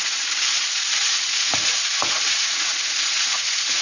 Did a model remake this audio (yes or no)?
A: yes